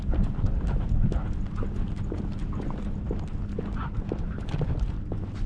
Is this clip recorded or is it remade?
recorded